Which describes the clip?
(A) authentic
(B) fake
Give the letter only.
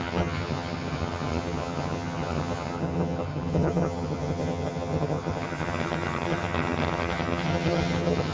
B